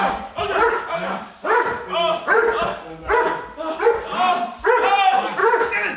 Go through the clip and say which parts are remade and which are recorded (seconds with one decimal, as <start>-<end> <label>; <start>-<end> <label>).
0.0-6.0 recorded